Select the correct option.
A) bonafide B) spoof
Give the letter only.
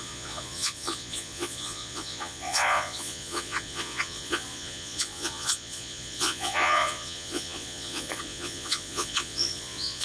B